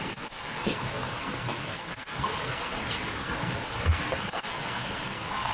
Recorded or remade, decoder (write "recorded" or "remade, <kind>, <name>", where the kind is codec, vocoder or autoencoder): remade, codec, SNAC